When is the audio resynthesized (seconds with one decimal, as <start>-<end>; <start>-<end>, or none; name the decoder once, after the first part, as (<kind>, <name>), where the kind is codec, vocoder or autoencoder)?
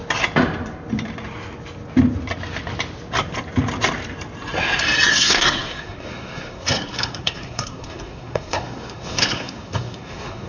5.1-10.5 (codec, SNAC)